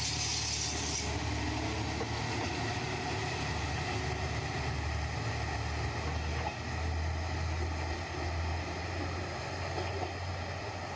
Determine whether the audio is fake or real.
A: real